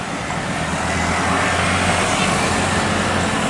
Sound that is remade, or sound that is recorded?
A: recorded